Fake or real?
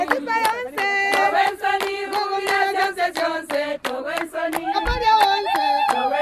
real